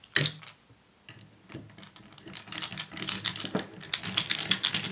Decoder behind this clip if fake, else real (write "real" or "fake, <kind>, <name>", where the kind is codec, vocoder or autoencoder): real